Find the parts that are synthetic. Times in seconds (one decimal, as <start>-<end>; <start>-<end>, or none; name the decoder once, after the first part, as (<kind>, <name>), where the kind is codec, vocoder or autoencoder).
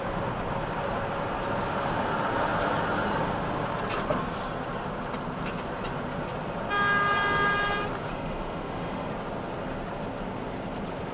8.1-9.1 (autoencoder, DAC-VAE)